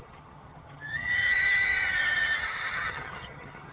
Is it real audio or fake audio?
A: fake